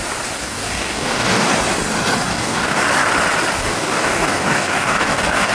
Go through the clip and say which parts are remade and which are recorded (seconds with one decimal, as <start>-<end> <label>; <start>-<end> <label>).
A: 0.0-0.4 recorded; 0.4-1.5 remade; 1.5-2.3 recorded; 2.3-2.8 remade; 2.8-3.6 recorded; 3.6-5.5 remade